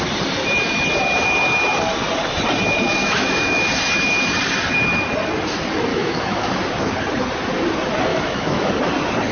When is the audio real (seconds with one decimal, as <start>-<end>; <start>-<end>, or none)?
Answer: 0.0-3.0; 3.6-5.9; 6.5-8.1; 8.7-9.3